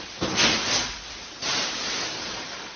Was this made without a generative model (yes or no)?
yes